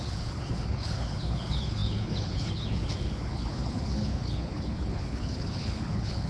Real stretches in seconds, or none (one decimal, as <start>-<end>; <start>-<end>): none

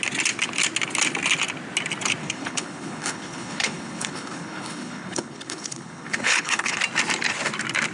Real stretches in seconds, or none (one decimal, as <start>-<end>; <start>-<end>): 0.0-2.2; 6.8-7.9

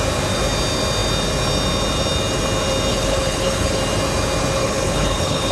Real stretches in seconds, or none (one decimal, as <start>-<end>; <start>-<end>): 0.0-2.9; 3.8-4.6

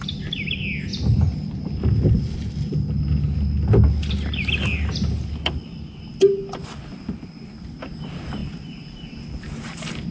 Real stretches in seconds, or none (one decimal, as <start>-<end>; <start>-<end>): 0.0-10.1